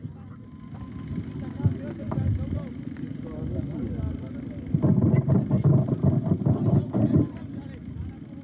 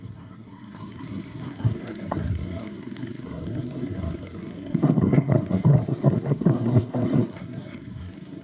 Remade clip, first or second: second